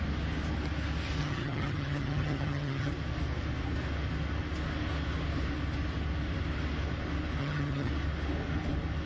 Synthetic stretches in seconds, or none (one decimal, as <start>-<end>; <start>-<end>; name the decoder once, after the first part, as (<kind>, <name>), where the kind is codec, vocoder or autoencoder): 1.2-2.9 (vocoder, HiFi-GAN); 7.4-7.9